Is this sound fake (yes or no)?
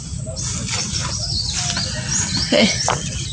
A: no